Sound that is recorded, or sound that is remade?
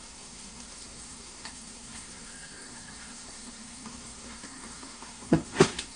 remade